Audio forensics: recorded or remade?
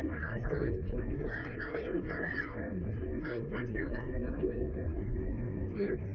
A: remade